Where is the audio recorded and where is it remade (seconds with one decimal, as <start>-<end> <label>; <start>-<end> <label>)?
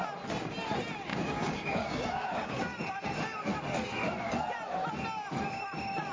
0.0-1.1 recorded; 1.1-2.6 remade; 2.6-6.1 recorded